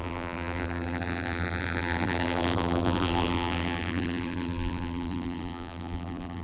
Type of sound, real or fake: fake